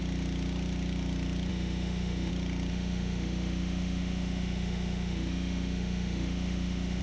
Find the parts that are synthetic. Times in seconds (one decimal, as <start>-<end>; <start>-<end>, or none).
1.5-2.3; 2.7-7.0